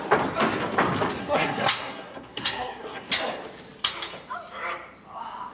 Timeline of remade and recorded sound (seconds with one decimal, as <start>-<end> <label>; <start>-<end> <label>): 0.0-1.2 recorded; 1.2-3.1 remade; 3.1-5.5 recorded